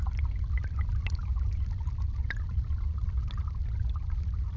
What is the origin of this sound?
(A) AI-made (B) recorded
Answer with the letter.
B